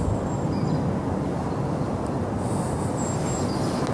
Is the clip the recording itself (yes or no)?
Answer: yes